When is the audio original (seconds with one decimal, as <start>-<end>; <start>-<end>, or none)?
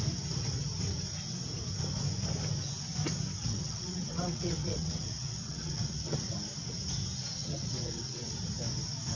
0.0-3.4; 6.3-7.4; 8.3-9.2